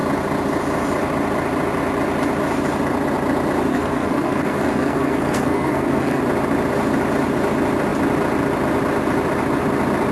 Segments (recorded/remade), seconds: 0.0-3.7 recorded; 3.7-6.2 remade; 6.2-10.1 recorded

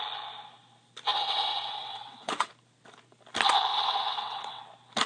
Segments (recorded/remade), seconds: 0.0-1.1 recorded; 1.1-2.5 remade; 2.5-3.7 recorded; 3.7-4.6 remade; 4.6-5.1 recorded

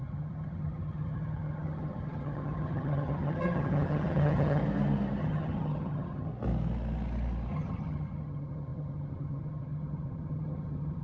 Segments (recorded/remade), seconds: 0.0-4.6 remade; 4.6-5.2 recorded; 5.2-6.3 remade; 6.3-7.5 recorded; 7.5-11.0 remade

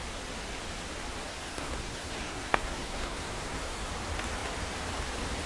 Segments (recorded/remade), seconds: 0.0-1.3 recorded; 1.3-3.9 remade; 3.9-5.5 recorded

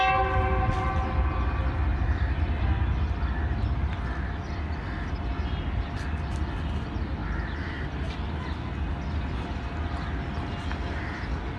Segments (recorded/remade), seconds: 0.0-1.9 recorded; 1.9-2.6 remade; 2.6-11.6 recorded

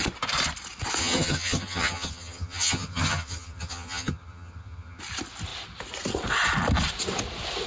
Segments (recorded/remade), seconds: 0.0-1.0 recorded; 1.0-5.0 remade; 5.0-7.7 recorded

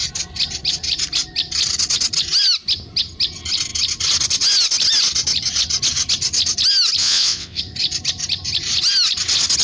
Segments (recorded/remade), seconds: 0.0-7.0 recorded; 7.0-7.6 remade; 7.6-9.6 recorded

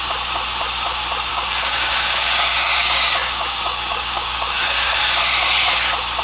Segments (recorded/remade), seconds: 0.0-1.3 recorded; 1.3-5.0 remade; 5.0-6.2 recorded